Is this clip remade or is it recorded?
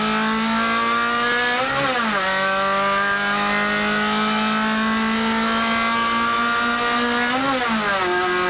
recorded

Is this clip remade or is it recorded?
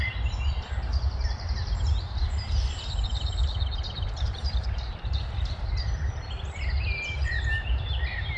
remade